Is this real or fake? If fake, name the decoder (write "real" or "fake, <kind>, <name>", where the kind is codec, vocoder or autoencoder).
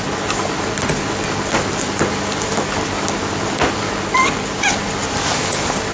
real